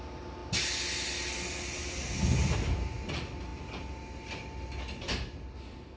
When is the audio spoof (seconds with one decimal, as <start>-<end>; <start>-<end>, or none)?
none